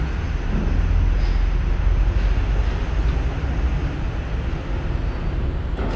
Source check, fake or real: real